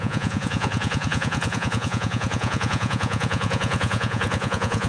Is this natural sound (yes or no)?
no